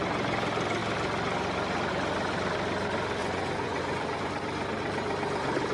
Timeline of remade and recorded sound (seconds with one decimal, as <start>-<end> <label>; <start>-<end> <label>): 0.0-3.2 recorded; 3.2-4.3 remade; 4.3-5.7 recorded